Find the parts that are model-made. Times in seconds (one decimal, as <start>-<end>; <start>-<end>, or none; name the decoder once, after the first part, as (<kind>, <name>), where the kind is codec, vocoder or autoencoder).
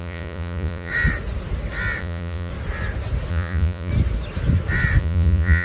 0.0-0.9 (vocoder, Vocos); 2.0-2.5; 3.3-3.9; 5.0-5.6